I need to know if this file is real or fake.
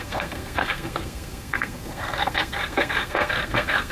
fake